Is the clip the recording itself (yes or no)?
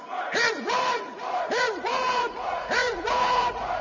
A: no